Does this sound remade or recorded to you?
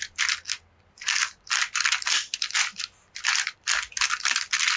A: recorded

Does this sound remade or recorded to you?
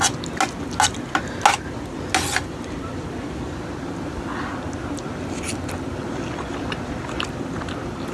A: recorded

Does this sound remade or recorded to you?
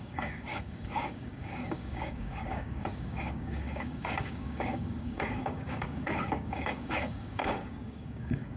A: remade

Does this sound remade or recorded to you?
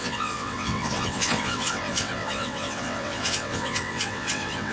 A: remade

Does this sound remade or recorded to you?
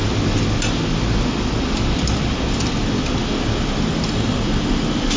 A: recorded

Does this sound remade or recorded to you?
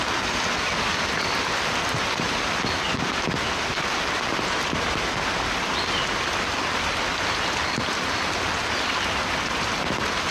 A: recorded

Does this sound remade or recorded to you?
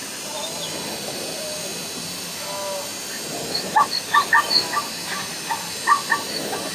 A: recorded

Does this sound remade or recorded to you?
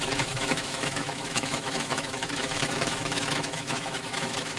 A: remade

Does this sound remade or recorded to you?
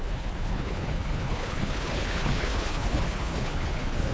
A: remade